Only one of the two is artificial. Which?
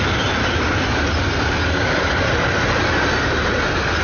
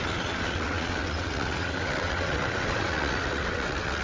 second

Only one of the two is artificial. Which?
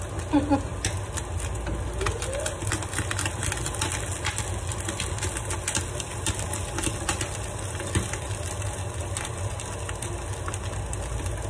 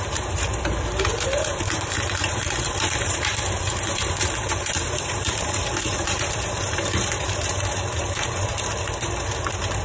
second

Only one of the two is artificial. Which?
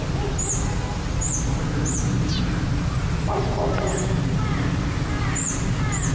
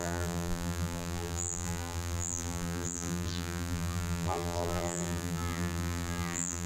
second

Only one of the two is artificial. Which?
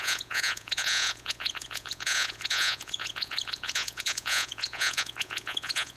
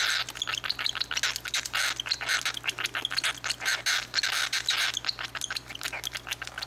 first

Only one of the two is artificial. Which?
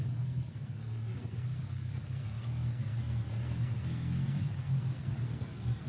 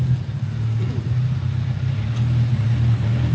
first